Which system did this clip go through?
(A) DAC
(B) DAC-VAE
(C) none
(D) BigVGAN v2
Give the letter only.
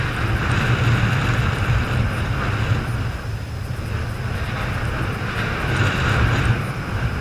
C